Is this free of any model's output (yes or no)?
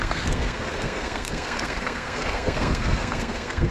no